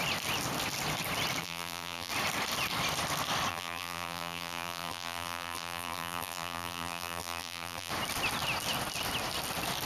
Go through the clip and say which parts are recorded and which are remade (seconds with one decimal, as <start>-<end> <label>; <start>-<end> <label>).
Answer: 0.0-1.4 recorded; 1.4-2.1 remade; 2.1-3.5 recorded; 3.5-7.9 remade; 7.9-9.9 recorded